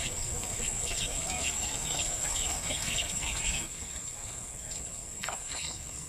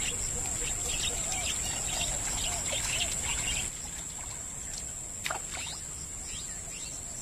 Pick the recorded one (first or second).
second